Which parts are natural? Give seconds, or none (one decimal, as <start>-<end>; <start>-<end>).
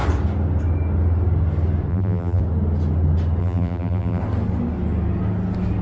0.0-1.9; 2.4-3.4; 4.2-5.8